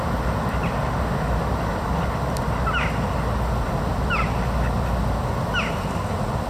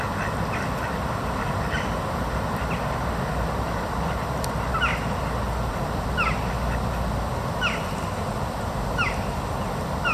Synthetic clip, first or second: second